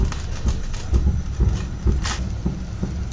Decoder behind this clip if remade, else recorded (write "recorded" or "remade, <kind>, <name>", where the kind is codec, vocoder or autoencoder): remade, vocoder, BigVGAN v2